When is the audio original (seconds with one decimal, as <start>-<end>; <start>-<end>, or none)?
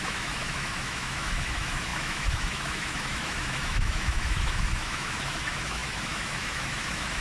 none